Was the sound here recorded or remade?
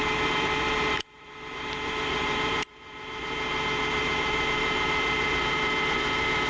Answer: remade